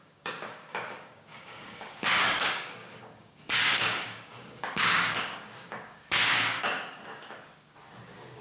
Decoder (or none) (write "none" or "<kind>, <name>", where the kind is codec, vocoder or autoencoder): codec, DAC